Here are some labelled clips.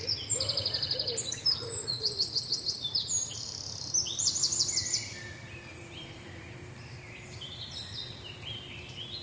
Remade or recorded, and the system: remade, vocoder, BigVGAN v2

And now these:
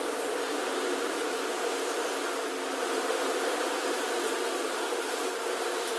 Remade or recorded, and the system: recorded